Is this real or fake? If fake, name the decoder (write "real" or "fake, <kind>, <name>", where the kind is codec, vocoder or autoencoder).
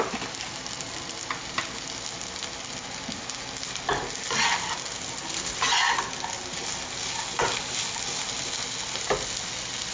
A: real